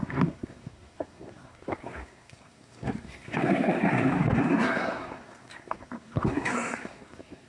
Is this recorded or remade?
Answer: remade